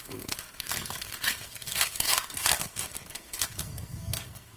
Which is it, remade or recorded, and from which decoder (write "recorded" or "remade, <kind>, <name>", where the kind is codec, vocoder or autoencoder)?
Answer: remade, codec, SNAC